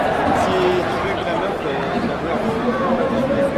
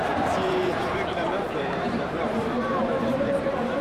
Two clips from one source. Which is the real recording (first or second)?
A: first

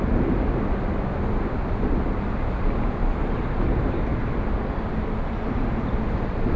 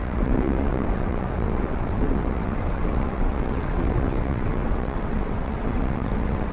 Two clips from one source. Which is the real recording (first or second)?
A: first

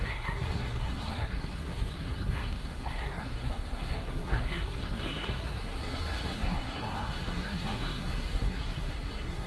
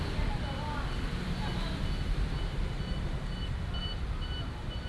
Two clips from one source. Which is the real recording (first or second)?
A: second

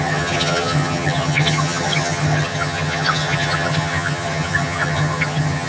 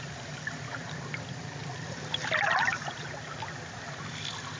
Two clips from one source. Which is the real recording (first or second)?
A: second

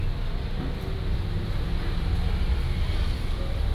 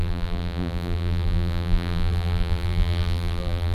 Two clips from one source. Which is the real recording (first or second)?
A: first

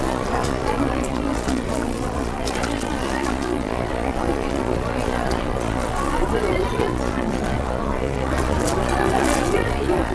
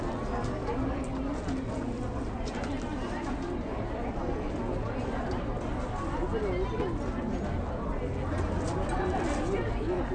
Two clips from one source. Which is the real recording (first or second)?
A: second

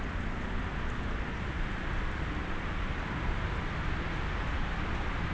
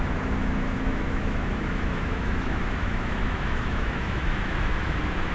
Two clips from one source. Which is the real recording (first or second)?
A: first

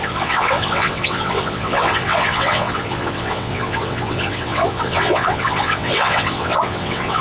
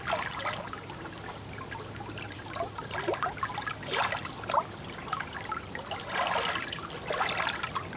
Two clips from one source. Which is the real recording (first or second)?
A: second